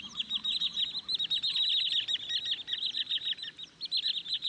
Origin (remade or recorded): recorded